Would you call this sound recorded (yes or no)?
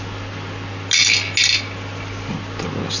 yes